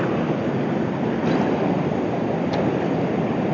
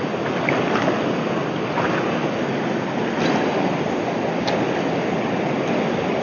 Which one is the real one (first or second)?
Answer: second